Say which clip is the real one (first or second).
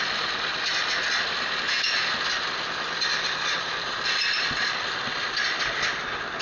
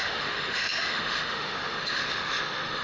first